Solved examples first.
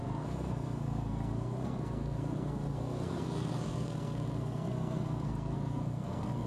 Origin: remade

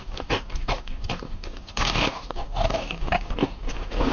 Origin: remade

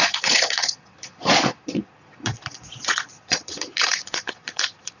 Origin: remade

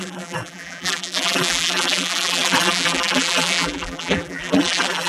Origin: remade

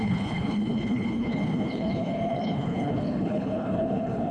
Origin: remade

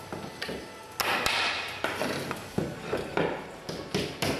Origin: recorded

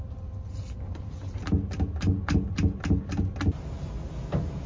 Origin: recorded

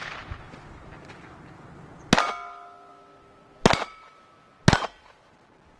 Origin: recorded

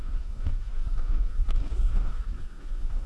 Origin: remade